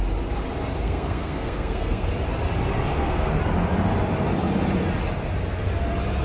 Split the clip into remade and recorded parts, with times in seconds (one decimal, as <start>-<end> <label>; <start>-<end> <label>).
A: 0.0-0.8 recorded; 0.8-2.1 remade; 2.1-2.9 recorded; 2.9-3.4 remade; 3.4-6.2 recorded